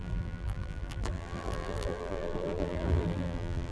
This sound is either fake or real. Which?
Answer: fake